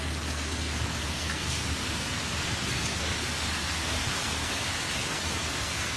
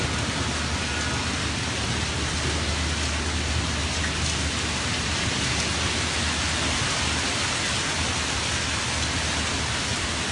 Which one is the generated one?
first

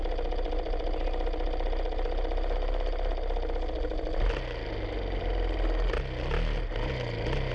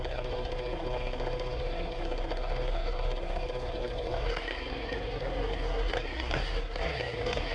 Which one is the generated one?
second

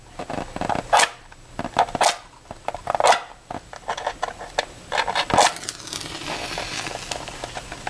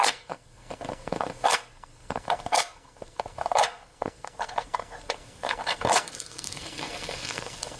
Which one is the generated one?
second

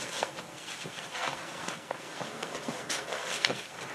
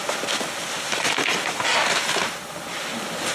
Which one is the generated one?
first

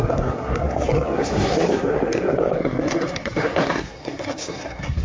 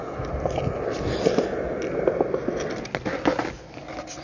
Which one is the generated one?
first